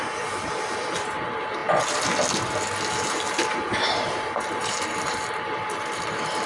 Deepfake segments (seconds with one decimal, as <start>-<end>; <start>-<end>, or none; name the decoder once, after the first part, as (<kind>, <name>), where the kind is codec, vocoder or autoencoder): 0.0-1.6 (vocoder, BigVGAN v2); 2.9-6.5